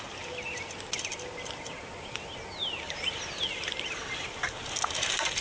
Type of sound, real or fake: real